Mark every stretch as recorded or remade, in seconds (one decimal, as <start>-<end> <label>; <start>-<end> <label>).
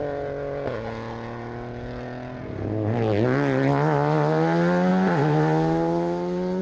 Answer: 0.0-6.6 recorded